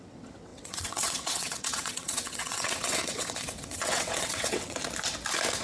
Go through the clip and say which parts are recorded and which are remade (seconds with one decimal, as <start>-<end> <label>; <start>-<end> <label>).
0.0-4.8 remade; 4.8-5.6 recorded